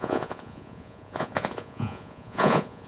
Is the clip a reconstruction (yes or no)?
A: yes